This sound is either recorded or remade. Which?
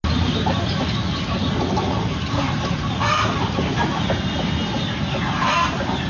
recorded